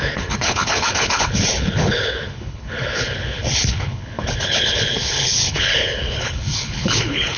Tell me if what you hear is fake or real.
fake